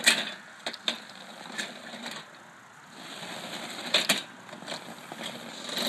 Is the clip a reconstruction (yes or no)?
no